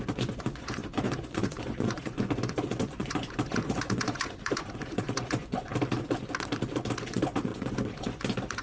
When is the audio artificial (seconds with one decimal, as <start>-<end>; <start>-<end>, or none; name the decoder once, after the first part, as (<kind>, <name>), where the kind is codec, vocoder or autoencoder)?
0.0-5.7 (vocoder, Vocos); 7.0-8.6